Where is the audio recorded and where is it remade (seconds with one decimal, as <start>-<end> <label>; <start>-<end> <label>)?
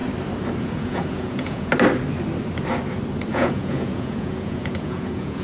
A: 0.0-0.6 recorded; 0.6-1.7 remade; 1.7-3.3 recorded; 3.3-5.4 remade